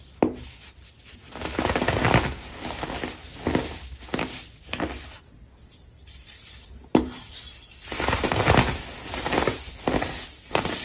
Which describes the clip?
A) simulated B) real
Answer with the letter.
B